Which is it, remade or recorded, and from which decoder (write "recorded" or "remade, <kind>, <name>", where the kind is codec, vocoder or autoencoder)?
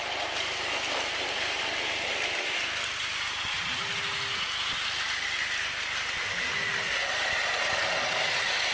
recorded